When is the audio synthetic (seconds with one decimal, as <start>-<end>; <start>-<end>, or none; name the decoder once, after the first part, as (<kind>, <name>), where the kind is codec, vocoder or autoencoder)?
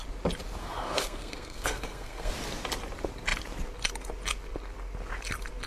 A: 0.6-2.3 (codec, SNAC)